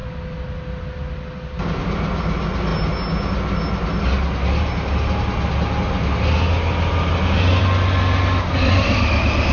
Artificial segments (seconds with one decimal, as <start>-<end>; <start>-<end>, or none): none